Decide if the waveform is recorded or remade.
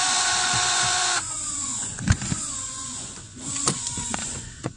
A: remade